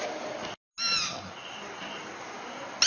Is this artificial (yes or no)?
no